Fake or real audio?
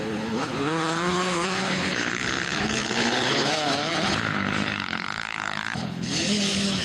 fake